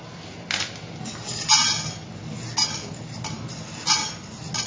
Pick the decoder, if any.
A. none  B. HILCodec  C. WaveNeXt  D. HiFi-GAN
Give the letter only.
A